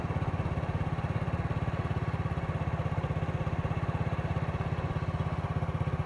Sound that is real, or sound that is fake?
real